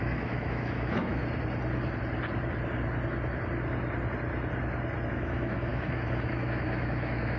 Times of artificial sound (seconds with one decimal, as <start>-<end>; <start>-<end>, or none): 0.0-1.2; 5.1-7.4